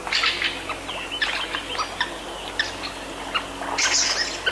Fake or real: real